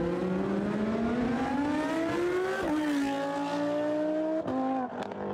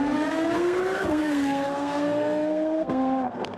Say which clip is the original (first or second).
first